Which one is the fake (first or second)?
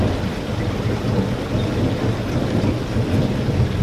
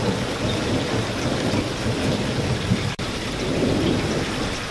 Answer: second